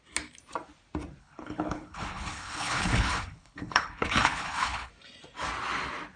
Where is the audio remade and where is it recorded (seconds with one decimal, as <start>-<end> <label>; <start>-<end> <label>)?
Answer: 0.0-1.2 recorded; 1.2-4.9 remade; 4.9-6.2 recorded